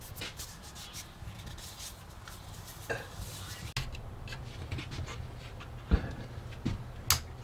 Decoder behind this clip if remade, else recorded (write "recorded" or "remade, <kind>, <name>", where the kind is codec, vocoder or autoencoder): recorded